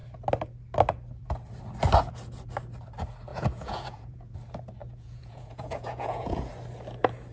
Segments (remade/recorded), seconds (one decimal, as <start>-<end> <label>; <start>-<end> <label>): 0.0-3.3 recorded; 3.3-4.3 remade; 4.3-4.8 recorded; 4.8-6.5 remade; 6.5-7.3 recorded